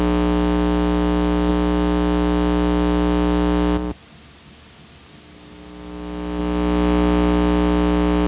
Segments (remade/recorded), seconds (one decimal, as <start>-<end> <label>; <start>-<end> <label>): 0.0-8.3 recorded